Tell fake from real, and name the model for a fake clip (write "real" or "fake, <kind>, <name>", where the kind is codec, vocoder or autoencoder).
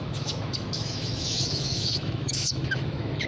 fake, autoencoder, DAC-VAE